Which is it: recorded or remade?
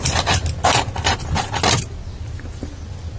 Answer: recorded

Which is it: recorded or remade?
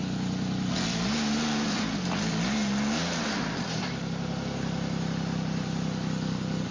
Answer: recorded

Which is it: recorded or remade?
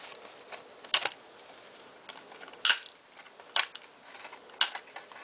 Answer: recorded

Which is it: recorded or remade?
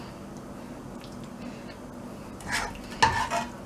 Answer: recorded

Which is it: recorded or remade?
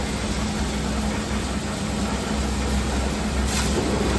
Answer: recorded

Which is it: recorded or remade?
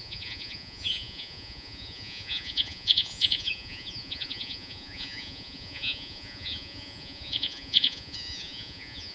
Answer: remade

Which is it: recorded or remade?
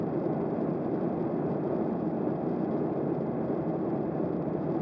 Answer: recorded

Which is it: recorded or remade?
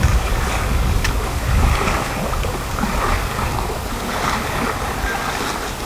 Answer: remade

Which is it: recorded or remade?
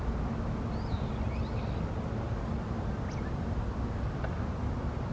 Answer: recorded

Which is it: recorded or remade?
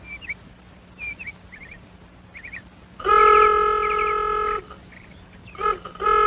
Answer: recorded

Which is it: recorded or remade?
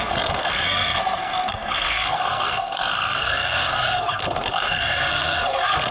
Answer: remade